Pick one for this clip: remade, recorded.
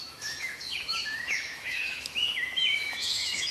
remade